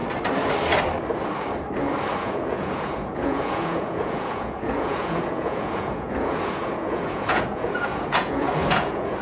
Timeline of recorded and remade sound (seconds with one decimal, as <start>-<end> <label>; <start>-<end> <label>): 0.0-2.2 recorded; 2.2-9.2 remade